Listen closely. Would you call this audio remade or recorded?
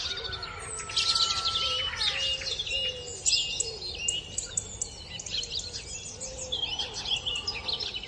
recorded